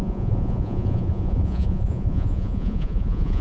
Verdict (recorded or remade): remade